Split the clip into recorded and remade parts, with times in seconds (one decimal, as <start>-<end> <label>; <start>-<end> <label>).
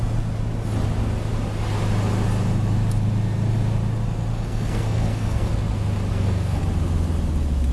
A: 0.0-4.3 recorded; 4.3-5.5 remade; 5.5-6.1 recorded; 6.1-6.6 remade; 6.6-7.7 recorded